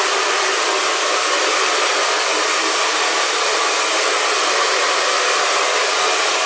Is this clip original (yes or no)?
yes